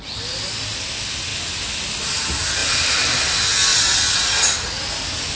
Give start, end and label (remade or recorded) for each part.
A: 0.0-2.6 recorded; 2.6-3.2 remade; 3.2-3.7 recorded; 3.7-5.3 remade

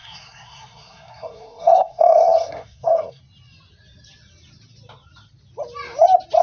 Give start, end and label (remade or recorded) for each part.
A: 0.0-3.2 remade; 3.2-6.4 recorded

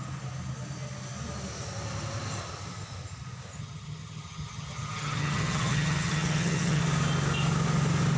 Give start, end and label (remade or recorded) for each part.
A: 0.0-3.6 recorded; 3.6-6.8 remade; 6.8-8.2 recorded

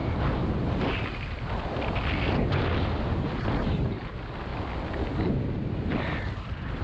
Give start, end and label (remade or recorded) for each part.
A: 0.0-2.8 recorded; 2.8-4.5 remade; 4.5-6.3 recorded; 6.3-6.8 remade

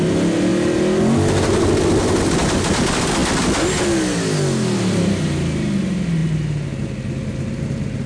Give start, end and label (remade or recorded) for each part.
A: 0.0-8.1 recorded

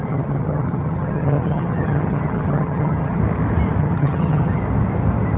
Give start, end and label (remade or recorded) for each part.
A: 0.0-3.2 remade; 3.2-3.8 recorded; 3.8-4.6 remade; 4.6-5.4 recorded

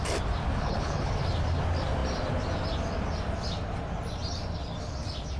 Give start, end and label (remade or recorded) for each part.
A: 0.0-0.5 recorded; 0.5-1.1 remade; 1.1-5.4 recorded

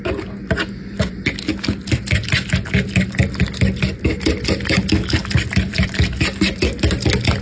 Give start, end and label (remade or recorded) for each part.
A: 0.0-7.4 recorded